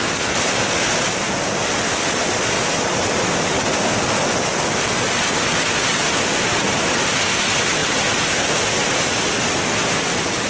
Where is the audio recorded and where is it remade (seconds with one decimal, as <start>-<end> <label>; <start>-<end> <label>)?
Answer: 0.0-10.5 recorded